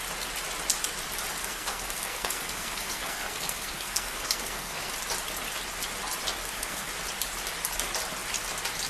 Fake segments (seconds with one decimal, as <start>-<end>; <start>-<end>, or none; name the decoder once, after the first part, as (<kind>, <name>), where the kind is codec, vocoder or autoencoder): 1.4-4.9 (codec, SNAC); 6.4-6.9